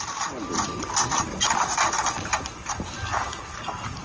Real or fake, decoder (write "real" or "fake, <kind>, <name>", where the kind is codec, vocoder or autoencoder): real